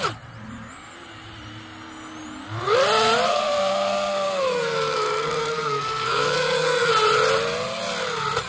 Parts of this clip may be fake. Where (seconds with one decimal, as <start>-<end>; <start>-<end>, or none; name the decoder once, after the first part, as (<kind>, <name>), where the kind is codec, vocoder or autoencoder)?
3.3-6.9 (codec, SNAC)